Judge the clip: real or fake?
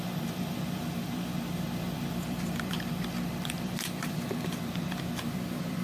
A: fake